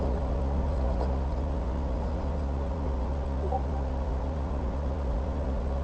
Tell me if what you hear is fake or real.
fake